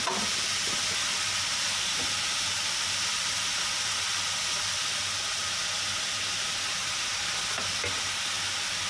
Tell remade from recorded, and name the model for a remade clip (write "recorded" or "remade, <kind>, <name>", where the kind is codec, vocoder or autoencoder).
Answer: recorded